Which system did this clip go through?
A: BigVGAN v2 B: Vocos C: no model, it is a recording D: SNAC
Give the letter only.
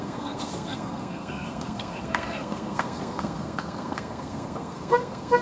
D